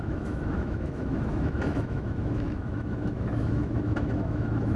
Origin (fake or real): fake